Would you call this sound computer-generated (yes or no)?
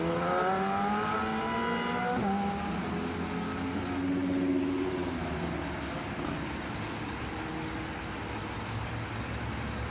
no